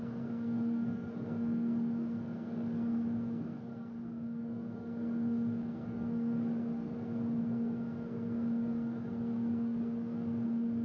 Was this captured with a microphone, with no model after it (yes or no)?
no